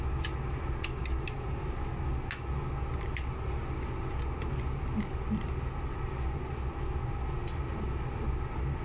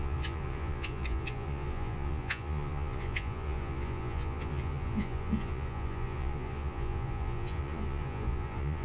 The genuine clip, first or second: first